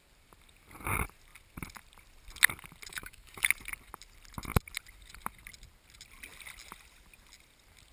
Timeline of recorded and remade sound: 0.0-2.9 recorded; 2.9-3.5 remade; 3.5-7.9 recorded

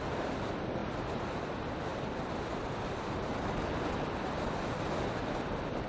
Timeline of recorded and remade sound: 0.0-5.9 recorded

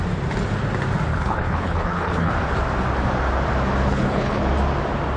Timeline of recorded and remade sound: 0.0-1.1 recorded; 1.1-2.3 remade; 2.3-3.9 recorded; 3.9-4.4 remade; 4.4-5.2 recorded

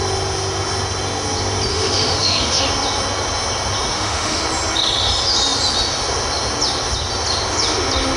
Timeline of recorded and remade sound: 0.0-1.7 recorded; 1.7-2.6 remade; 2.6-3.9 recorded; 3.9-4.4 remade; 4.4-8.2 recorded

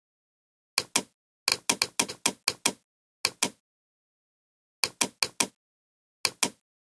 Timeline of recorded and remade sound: 0.0-6.9 recorded

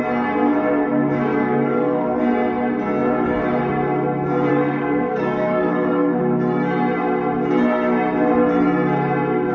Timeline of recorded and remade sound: 0.0-1.3 recorded; 1.3-2.2 remade; 2.2-4.5 recorded; 4.5-6.2 remade; 6.2-9.5 recorded